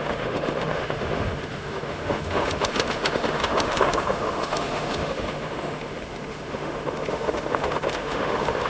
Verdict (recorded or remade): remade